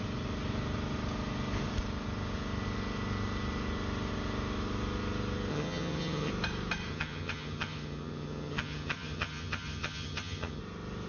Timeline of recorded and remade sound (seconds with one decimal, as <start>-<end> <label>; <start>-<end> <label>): 0.0-5.5 recorded; 5.5-6.3 remade; 6.3-6.9 recorded; 6.9-10.6 remade; 10.6-11.1 recorded